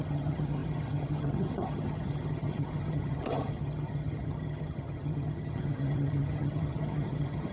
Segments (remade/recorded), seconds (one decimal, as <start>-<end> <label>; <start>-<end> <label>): 0.0-7.5 remade